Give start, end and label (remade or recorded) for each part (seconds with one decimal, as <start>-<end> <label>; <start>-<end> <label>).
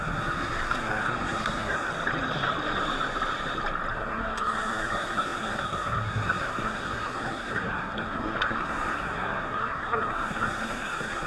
0.0-1.9 remade; 1.9-3.9 recorded; 3.9-11.3 remade